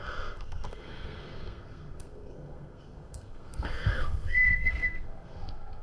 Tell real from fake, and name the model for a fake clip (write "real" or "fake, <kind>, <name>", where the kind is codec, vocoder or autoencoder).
fake, codec, SNAC